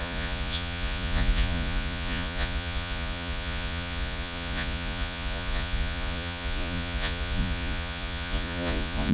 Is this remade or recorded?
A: remade